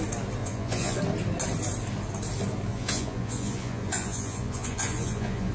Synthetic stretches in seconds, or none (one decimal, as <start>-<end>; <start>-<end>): 0.4-1.0; 2.7-5.5